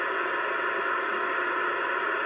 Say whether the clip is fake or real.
real